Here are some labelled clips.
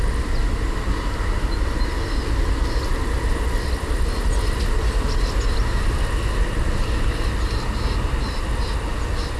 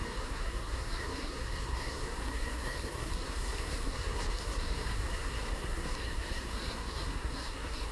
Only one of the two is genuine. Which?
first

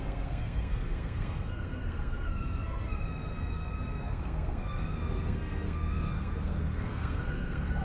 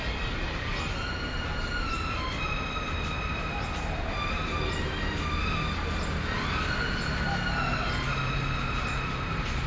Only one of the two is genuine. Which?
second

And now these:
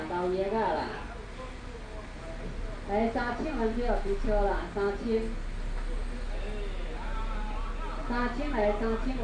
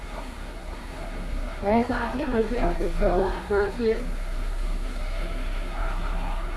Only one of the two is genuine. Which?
first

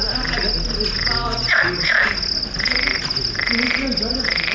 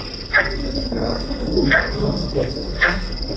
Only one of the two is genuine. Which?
first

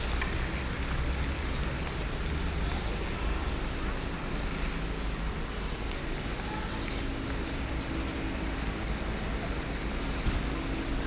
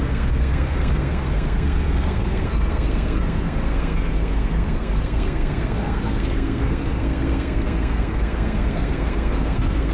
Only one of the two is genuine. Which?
first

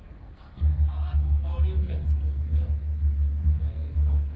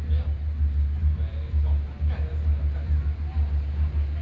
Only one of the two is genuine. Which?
second